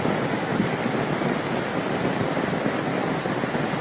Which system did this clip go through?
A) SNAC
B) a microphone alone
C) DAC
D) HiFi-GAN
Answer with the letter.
B